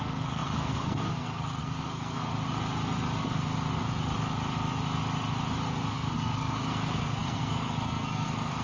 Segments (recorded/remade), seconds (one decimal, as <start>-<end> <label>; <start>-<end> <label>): 0.0-2.3 remade; 2.3-5.9 recorded; 5.9-8.6 remade